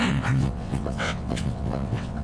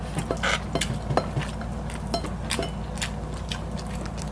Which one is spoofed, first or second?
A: first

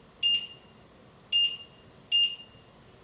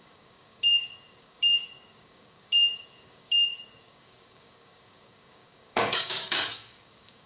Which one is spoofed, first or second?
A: second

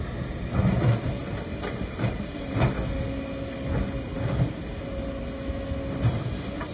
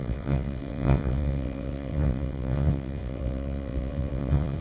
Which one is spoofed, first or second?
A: second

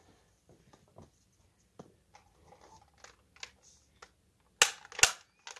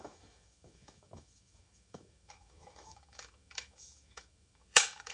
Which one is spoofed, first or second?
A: second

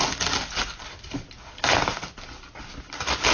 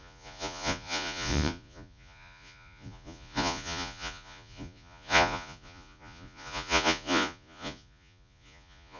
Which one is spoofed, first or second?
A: second